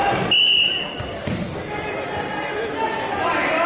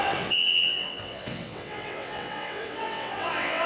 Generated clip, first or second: second